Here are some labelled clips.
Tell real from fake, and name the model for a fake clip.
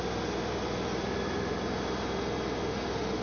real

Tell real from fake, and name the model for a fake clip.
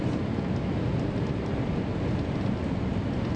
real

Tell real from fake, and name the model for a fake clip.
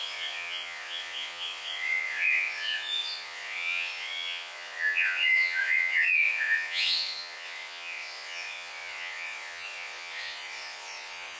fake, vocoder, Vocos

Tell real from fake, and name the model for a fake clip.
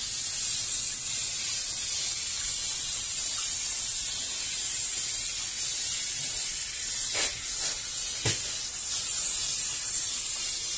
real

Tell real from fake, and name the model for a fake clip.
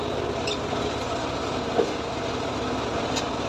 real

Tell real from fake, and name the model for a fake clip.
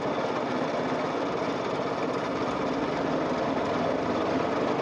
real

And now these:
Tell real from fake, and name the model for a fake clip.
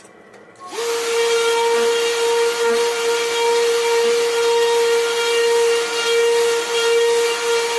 real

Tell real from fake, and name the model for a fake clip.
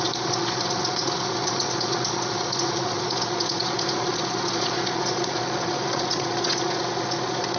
fake, vocoder, Vocos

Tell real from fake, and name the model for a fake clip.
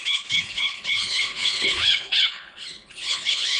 fake, codec, HILCodec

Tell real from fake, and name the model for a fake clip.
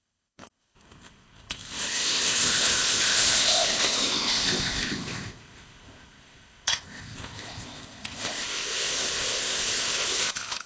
fake, codec, ZipCodec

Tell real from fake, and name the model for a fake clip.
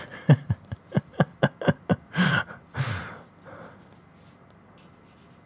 real